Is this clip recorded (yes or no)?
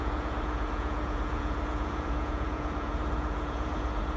no